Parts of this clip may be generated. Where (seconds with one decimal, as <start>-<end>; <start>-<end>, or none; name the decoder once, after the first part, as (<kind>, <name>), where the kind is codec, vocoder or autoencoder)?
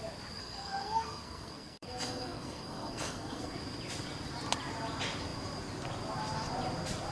0.4-3.6 (codec, SNAC)